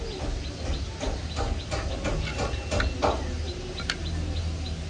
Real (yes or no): yes